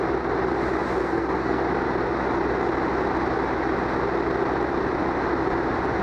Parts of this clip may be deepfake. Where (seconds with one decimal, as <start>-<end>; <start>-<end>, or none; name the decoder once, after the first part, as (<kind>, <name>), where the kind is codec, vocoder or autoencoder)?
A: 1.0-1.6 (codec, SNAC)